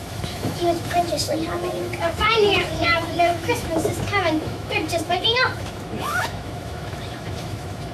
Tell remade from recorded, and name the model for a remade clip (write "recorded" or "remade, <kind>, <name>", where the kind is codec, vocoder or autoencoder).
remade, autoencoder, DAC-VAE